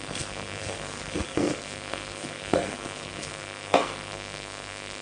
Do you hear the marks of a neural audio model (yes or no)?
yes